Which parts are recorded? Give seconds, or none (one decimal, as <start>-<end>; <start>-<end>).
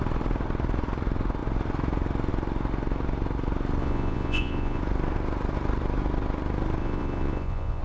0.0-3.8; 4.8-6.8